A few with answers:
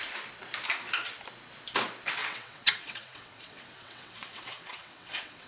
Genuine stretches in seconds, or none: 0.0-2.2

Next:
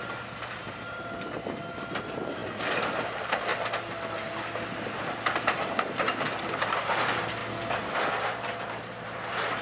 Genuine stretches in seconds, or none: 3.5-6.9; 7.4-8.2

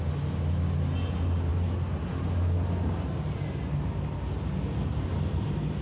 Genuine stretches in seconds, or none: 0.0-5.8

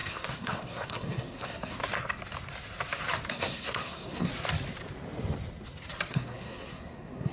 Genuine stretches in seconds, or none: 1.8-3.3; 4.3-6.1

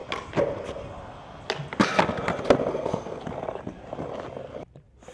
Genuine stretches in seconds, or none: 0.0-2.7; 3.2-5.1

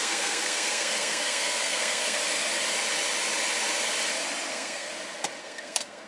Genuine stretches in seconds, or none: 2.2-4.5; 4.9-5.4

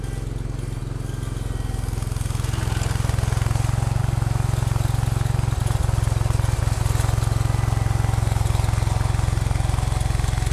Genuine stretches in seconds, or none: 0.0-10.5